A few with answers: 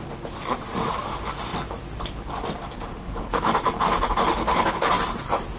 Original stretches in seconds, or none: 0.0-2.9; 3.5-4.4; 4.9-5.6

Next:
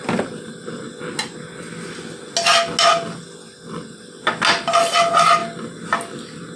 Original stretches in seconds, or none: 0.0-6.6

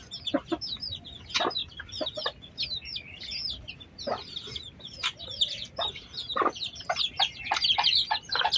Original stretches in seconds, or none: 0.0-6.2; 7.2-8.6

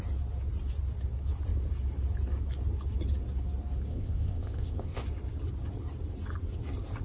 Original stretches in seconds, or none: 0.0-3.9; 5.0-7.0